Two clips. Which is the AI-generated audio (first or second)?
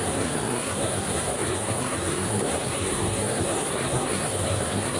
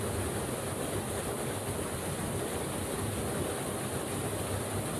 first